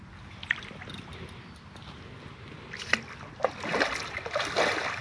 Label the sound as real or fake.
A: real